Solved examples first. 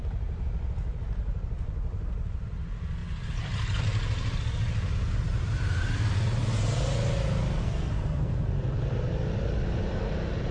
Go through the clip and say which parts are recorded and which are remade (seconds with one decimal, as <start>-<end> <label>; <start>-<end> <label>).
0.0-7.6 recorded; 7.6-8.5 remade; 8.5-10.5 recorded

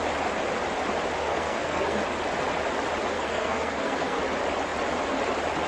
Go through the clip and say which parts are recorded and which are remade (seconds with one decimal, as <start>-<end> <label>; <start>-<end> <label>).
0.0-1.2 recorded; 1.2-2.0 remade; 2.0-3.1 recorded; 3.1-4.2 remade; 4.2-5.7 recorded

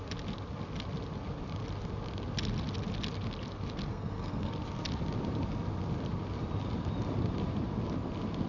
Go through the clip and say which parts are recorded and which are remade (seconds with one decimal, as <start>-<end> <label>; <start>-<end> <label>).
0.0-3.9 recorded; 3.9-4.5 remade; 4.5-8.5 recorded

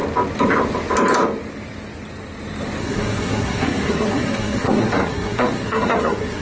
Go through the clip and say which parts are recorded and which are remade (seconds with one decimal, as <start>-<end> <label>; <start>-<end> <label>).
0.0-2.8 recorded; 2.8-6.4 remade

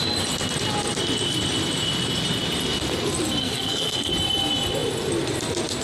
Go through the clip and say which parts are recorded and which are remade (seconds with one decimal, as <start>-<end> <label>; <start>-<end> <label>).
0.0-3.4 recorded; 3.4-4.1 remade; 4.1-5.8 recorded

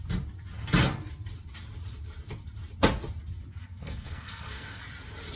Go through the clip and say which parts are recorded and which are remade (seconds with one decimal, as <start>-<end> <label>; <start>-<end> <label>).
0.0-3.6 recorded; 3.6-4.8 remade; 4.8-5.4 recorded